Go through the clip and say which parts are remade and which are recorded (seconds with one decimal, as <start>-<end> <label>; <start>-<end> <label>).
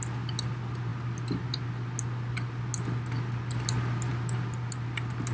0.0-5.3 recorded